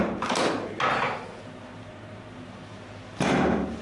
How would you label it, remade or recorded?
recorded